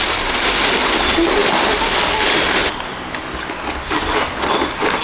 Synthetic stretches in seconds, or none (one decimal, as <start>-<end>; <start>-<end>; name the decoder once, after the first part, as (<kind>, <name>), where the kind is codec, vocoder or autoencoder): none